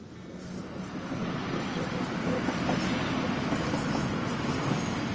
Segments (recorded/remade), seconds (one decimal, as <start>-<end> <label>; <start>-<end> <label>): 0.0-5.1 recorded